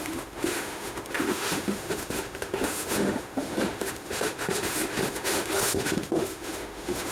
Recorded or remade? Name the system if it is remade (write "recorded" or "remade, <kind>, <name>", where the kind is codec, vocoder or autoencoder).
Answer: remade, autoencoder, DAC-VAE